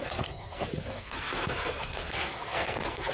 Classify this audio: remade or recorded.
remade